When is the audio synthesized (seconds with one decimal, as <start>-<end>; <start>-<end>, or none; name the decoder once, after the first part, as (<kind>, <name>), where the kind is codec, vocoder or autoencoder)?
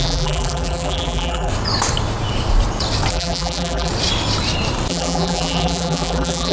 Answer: 0.0-1.5 (vocoder, BigVGAN v2); 3.1-3.9; 4.9-6.5